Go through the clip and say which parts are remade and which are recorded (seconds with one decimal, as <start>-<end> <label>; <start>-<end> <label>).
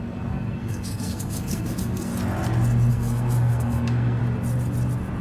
0.0-2.1 remade; 2.1-2.9 recorded; 2.9-4.2 remade; 4.2-5.2 recorded